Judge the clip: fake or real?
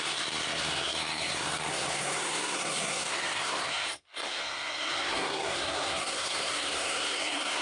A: fake